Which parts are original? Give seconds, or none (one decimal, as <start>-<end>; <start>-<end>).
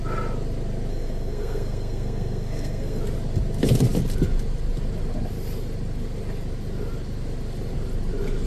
0.0-0.9; 3.0-8.5